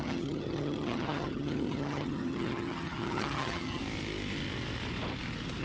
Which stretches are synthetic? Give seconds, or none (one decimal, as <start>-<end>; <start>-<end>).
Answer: 0.0-3.8